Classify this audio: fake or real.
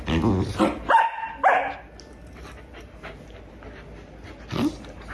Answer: real